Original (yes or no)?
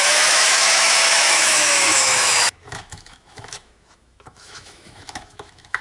no